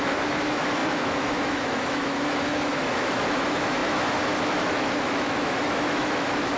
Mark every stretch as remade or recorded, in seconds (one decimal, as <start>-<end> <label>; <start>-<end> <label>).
0.0-6.6 remade